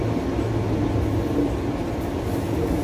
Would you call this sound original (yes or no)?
yes